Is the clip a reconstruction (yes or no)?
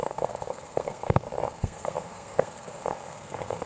yes